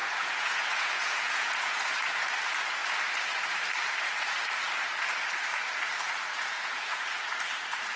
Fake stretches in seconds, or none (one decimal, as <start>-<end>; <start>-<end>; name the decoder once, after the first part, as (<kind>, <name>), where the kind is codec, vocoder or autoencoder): 0.0-1.8 (vocoder, Vocos); 6.3-7.0